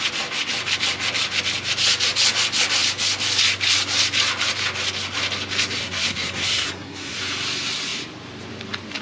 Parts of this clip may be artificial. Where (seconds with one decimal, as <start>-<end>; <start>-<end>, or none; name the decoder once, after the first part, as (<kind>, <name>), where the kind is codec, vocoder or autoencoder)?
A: 5.8-7.2 (codec, SNAC)